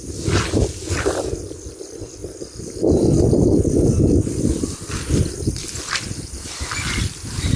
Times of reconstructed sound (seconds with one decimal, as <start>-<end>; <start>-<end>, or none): none